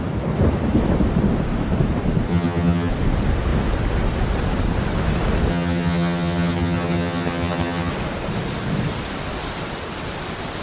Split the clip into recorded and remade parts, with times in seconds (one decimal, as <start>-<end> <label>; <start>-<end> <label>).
0.0-2.3 recorded; 2.3-2.9 remade; 2.9-5.5 recorded; 5.5-7.9 remade; 7.9-10.6 recorded